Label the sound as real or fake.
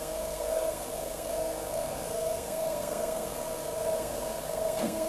fake